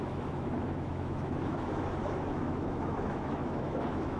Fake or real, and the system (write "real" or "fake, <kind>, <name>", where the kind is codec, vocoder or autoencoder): fake, autoencoder, DAC-VAE